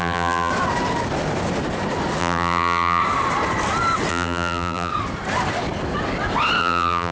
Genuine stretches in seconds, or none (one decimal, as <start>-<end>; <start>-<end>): 0.5-2.2; 3.0-4.1; 4.9-6.6